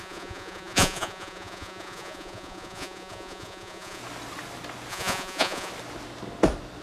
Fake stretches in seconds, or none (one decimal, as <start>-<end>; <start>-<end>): 0.0-4.0; 4.9-5.7